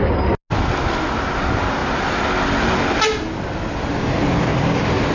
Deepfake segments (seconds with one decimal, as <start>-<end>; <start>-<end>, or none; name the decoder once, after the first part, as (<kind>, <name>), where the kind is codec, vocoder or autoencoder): none